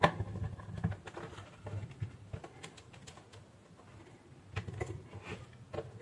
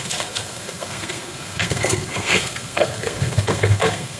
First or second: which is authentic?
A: first